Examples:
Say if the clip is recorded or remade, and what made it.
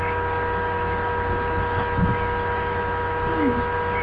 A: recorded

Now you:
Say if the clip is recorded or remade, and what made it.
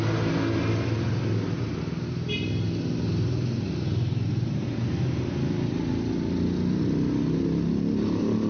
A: recorded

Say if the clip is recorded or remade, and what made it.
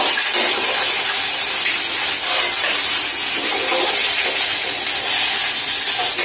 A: recorded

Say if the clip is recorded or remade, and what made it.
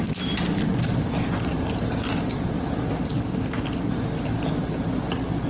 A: recorded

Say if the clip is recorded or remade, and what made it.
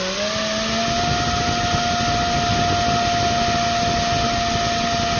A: recorded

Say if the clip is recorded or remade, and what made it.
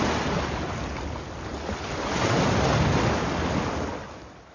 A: recorded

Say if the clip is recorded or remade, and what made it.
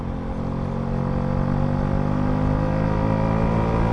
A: recorded